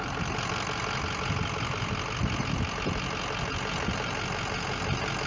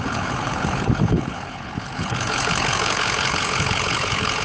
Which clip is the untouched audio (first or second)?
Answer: first